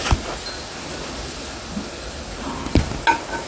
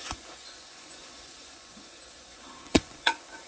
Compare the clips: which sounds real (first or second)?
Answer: first